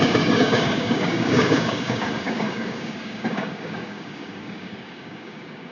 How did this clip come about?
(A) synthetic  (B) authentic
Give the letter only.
A